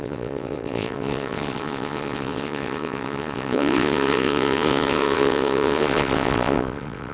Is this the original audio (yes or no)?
no